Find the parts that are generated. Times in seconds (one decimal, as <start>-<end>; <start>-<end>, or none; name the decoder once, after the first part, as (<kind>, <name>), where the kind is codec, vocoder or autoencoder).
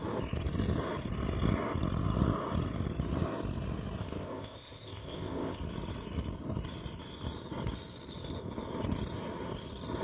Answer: 4.0-5.6 (codec, ZipCodec)